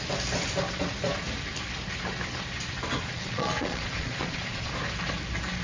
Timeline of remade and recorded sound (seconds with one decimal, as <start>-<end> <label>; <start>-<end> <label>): 0.0-3.0 recorded; 3.0-4.7 remade; 4.7-5.6 recorded